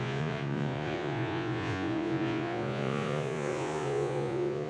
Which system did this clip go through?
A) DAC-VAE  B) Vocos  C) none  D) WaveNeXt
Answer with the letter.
B